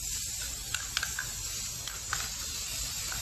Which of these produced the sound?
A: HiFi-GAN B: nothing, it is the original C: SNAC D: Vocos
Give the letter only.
B